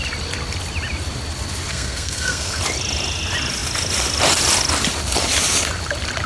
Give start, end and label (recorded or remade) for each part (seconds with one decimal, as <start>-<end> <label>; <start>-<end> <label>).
0.0-1.7 recorded; 1.7-2.6 remade; 2.6-6.3 recorded